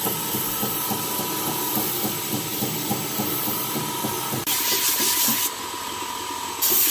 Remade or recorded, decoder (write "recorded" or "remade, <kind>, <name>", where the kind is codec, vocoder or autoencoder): recorded